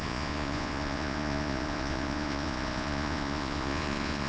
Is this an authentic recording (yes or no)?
no